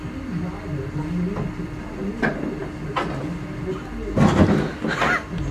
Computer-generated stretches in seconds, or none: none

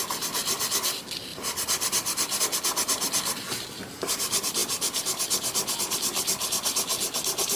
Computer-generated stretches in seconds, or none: none